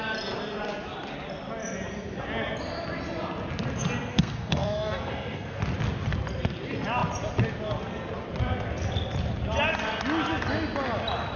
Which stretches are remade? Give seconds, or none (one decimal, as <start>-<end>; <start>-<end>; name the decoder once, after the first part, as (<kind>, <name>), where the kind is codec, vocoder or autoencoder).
4.1-5.6 (codec, SNAC)